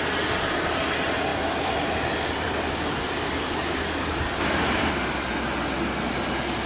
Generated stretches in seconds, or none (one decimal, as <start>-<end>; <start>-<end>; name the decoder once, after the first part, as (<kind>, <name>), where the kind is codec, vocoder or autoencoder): 1.3-5.3 (vocoder, BigVGAN v2)